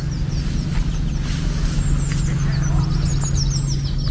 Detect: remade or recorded recorded